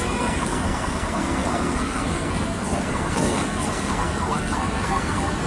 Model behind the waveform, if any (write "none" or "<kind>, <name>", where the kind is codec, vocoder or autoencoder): codec, SNAC